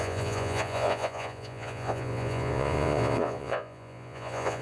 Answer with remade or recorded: remade